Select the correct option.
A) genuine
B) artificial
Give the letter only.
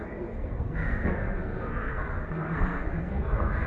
B